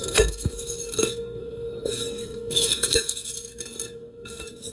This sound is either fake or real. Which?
fake